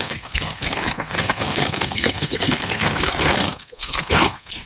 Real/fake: fake